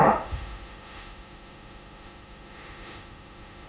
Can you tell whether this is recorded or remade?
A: remade